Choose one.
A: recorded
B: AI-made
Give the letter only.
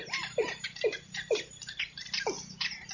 A